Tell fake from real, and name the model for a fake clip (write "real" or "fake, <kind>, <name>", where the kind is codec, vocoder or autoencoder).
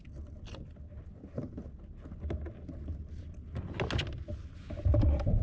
real